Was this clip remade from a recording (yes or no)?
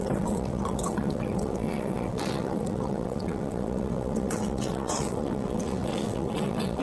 yes